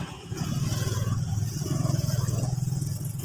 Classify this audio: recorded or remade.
remade